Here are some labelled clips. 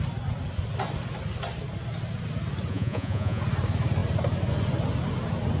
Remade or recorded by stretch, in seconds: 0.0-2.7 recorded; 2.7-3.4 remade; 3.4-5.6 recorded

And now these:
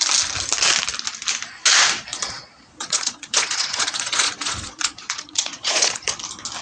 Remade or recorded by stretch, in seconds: 0.0-2.1 recorded; 2.1-6.1 remade; 6.1-6.6 recorded

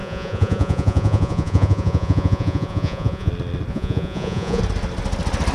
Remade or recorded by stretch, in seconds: 0.0-3.3 remade; 3.3-3.7 recorded; 3.7-4.6 remade; 4.6-5.5 recorded

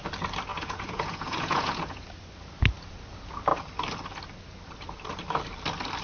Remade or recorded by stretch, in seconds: 0.0-0.5 recorded; 0.5-2.1 remade; 2.1-6.0 recorded

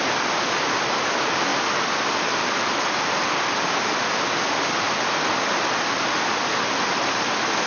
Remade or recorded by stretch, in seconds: 0.0-7.7 recorded